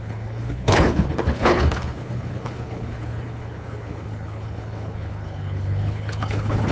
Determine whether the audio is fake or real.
fake